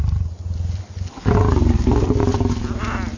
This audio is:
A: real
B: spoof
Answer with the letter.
A